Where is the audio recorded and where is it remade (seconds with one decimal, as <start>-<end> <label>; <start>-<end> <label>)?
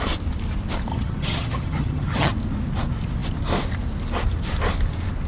0.0-0.9 recorded; 0.9-2.3 remade; 2.3-5.3 recorded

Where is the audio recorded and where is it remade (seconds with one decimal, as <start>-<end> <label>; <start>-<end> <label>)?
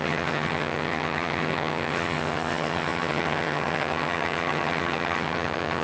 0.0-5.8 remade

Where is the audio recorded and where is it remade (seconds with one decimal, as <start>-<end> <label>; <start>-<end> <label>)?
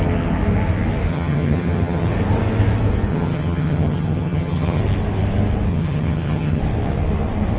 0.0-1.1 recorded; 1.1-2.1 remade; 2.1-3.1 recorded; 3.1-4.8 remade; 4.8-5.7 recorded; 5.7-6.6 remade; 6.6-7.6 recorded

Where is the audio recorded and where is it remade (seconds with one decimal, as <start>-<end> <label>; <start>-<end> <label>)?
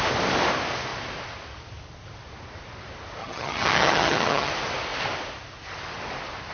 0.0-3.2 recorded; 3.2-4.5 remade; 4.5-6.5 recorded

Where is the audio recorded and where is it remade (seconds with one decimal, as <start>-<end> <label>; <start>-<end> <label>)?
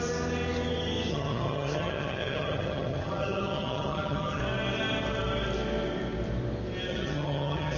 0.0-1.1 recorded; 1.1-4.4 remade; 4.4-6.9 recorded; 6.9-7.8 remade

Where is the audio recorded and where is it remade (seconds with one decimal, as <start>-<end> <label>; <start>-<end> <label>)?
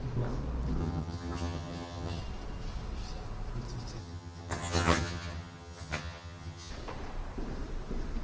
0.0-0.8 recorded; 0.8-2.2 remade; 2.2-4.0 recorded; 4.0-6.7 remade; 6.7-8.2 recorded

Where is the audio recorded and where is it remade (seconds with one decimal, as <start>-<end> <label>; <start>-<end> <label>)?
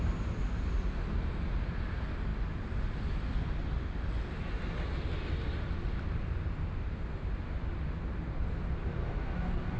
0.0-9.8 recorded